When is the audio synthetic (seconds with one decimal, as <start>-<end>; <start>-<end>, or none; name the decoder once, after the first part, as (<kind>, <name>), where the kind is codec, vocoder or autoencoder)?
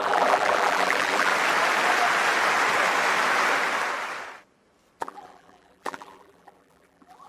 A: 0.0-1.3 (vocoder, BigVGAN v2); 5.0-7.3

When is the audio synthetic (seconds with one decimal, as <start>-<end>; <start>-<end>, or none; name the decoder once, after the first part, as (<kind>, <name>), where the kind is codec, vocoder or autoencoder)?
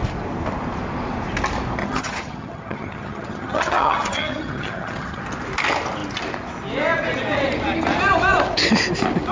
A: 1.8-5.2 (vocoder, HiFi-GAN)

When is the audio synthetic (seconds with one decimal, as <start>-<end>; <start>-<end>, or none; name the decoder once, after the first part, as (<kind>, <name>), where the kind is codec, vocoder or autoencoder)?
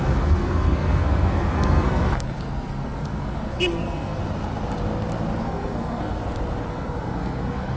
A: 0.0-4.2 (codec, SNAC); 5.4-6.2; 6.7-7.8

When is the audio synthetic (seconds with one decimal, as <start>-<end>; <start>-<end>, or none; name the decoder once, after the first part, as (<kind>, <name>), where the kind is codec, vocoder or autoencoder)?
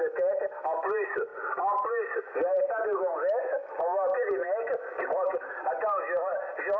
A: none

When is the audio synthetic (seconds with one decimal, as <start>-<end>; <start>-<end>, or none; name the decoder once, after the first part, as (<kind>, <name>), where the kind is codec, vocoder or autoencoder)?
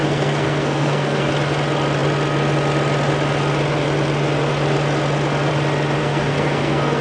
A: 0.0-1.3 (codec, SNAC); 6.0-7.0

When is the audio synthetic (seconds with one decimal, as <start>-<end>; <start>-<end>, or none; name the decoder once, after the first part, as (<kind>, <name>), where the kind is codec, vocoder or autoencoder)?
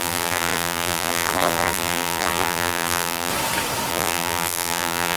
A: 0.0-3.3 (vocoder, BigVGAN v2); 3.9-5.2